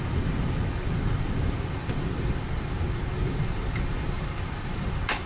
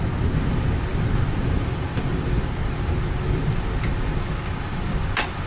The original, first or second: second